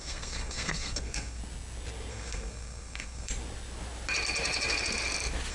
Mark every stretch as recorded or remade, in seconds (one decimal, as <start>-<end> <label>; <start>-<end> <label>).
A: 0.0-1.4 remade; 1.4-2.1 recorded; 2.1-3.3 remade; 3.3-5.5 recorded